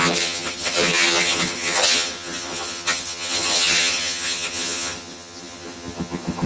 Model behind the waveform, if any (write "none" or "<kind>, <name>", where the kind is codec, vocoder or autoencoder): vocoder, HiFi-GAN